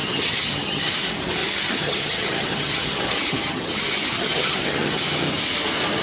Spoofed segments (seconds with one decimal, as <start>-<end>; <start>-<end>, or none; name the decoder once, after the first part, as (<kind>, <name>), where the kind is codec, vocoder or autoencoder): 0.0-0.9 (vocoder, HiFi-GAN); 1.4-5.0